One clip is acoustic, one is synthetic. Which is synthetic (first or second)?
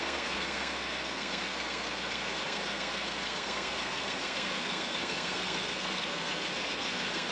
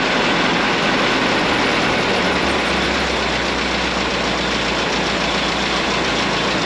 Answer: first